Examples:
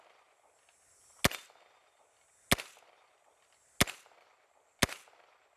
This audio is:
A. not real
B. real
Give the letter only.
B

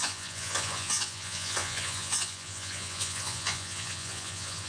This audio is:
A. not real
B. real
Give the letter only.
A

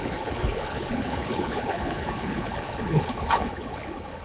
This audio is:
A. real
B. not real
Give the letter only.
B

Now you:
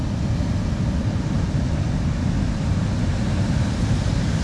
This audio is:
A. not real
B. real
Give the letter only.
B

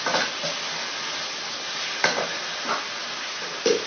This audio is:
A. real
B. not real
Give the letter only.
A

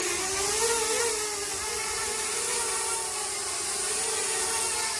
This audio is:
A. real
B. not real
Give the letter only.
A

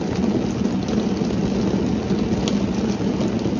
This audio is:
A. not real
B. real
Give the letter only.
B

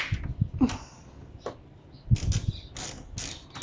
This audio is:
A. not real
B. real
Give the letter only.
B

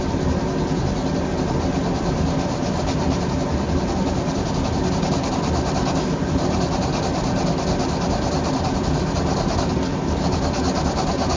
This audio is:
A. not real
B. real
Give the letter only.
B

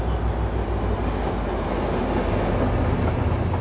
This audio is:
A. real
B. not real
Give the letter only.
A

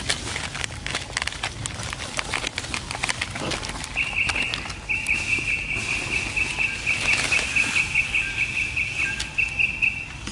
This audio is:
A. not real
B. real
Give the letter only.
B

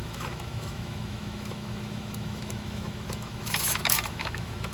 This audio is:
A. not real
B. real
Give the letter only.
A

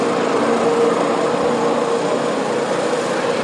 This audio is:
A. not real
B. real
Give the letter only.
B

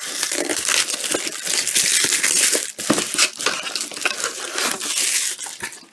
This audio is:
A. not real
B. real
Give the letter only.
B